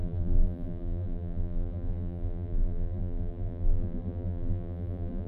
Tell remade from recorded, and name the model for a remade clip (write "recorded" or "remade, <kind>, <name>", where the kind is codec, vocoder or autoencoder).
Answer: remade, vocoder, BigVGAN v2